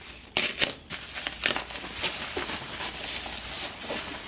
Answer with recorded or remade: recorded